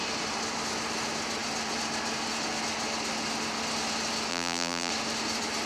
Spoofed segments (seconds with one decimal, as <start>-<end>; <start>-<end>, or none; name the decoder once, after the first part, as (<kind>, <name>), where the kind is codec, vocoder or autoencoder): 4.3-4.9 (vocoder, BigVGAN v2)